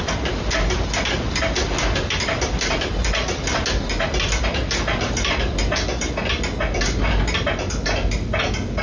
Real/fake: real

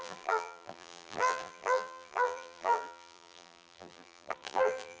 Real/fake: fake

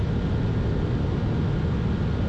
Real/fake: real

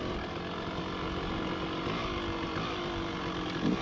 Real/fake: real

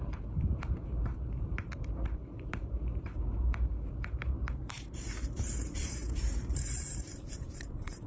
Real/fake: fake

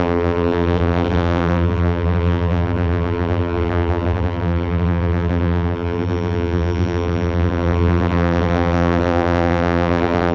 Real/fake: fake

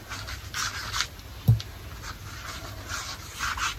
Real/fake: real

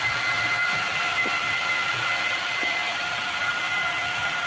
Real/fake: fake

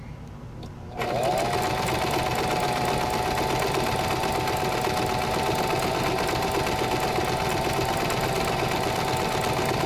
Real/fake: real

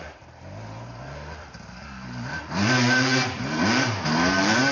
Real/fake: fake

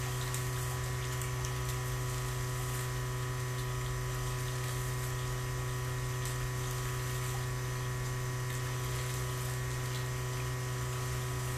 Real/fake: real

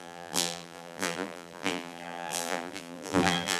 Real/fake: fake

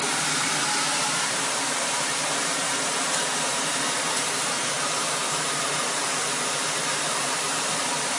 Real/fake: fake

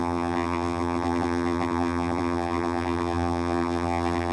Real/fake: fake